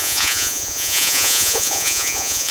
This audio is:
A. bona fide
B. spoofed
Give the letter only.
B